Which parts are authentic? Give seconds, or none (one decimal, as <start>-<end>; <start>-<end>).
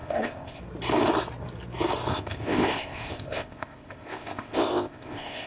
0.6-2.1